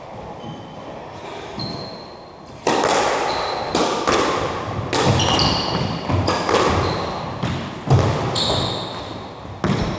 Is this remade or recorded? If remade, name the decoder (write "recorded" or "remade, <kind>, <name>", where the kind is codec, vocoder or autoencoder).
recorded